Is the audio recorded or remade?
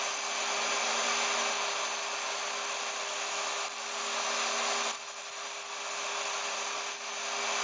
recorded